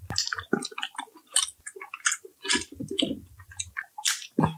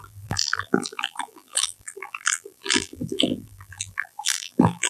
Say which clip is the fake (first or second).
second